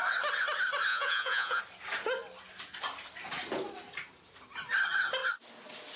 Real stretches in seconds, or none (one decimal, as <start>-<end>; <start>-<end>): 0.0-0.9; 1.6-6.0